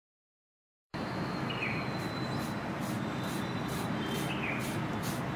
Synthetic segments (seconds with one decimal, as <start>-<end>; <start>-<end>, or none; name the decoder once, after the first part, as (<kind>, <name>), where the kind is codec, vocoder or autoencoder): 0.0-1.5 (autoencoder, DAC-VAE)